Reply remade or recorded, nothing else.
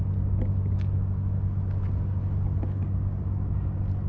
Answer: recorded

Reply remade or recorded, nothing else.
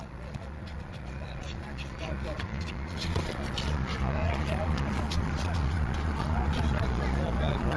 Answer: remade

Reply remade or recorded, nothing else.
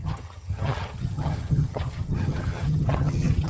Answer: remade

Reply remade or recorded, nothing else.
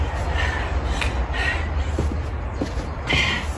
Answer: recorded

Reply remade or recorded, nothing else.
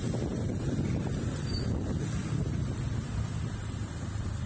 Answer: recorded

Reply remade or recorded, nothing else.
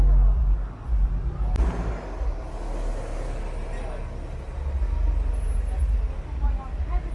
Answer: recorded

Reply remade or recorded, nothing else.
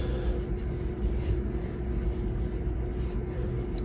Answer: recorded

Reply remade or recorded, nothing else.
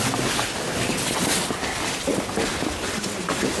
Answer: recorded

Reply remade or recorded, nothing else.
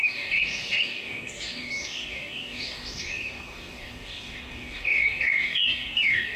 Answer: remade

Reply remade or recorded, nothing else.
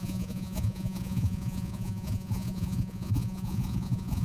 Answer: remade